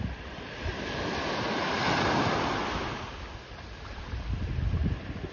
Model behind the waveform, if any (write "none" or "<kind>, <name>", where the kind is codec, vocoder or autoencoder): none